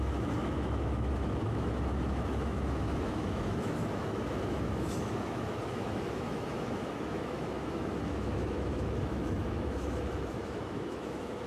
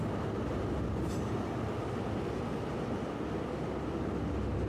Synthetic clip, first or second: first